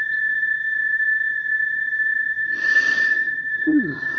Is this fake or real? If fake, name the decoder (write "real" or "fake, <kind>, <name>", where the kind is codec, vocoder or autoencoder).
fake, vocoder, HiFi-GAN